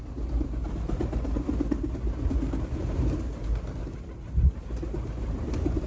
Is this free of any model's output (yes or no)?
yes